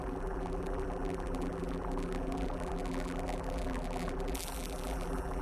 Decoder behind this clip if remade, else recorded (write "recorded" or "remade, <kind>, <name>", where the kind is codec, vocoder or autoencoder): remade, vocoder, BigVGAN v2